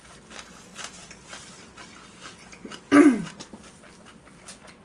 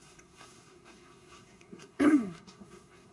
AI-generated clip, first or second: second